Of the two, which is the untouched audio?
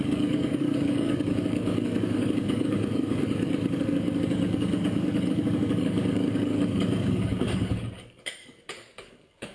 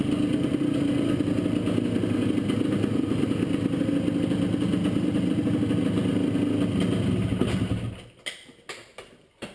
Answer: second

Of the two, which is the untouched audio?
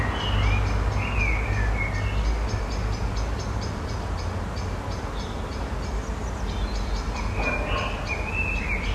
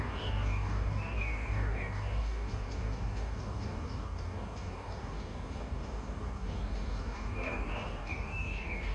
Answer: first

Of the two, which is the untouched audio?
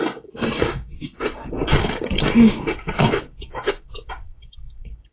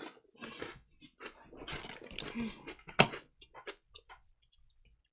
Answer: second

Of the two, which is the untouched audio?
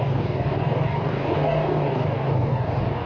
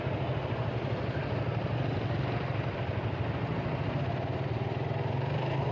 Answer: second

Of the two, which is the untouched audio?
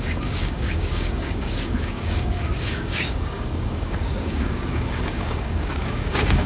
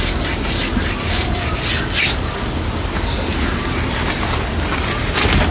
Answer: second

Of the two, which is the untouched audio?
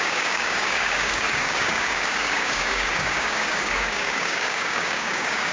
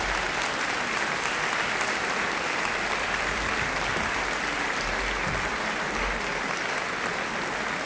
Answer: second